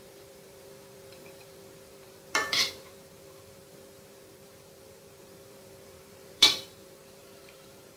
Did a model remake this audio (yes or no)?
yes